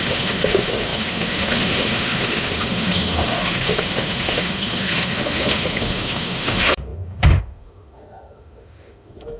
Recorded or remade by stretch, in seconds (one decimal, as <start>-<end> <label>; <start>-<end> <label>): 0.0-9.4 remade